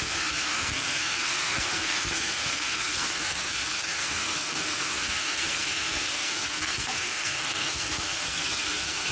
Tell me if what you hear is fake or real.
fake